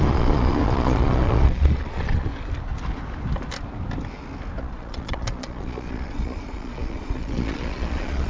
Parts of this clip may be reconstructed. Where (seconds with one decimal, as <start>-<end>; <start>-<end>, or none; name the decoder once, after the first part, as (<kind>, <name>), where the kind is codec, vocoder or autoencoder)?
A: 0.0-2.3 (vocoder, Vocos); 4.6-8.3